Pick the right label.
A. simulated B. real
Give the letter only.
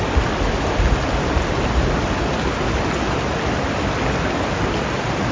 B